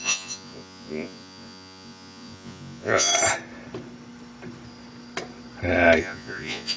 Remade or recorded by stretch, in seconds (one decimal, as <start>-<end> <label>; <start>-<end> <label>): 0.0-3.1 remade; 3.1-6.0 recorded; 6.0-6.8 remade